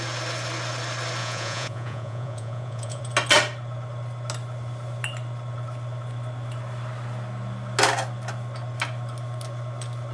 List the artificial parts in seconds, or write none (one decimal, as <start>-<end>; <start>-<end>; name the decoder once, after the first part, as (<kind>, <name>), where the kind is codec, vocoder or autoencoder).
1.2-3.0 (vocoder, Vocos)